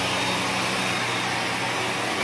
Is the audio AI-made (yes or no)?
no